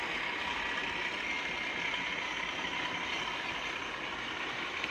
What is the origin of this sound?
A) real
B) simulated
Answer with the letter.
A